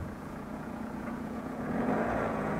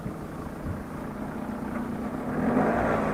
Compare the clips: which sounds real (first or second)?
second